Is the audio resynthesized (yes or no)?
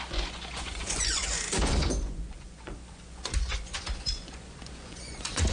yes